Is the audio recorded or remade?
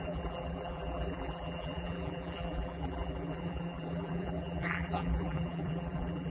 remade